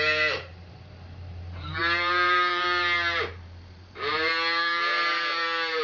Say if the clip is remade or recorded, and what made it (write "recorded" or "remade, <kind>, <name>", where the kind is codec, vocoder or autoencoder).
remade, vocoder, BigVGAN v2